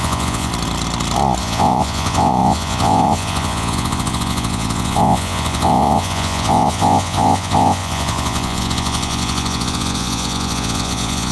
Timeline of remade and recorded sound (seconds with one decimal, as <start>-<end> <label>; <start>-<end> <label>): 0.0-0.5 remade; 0.5-1.4 recorded; 1.4-11.3 remade